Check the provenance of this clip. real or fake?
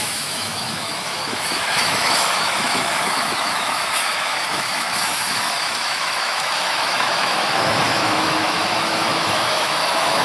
fake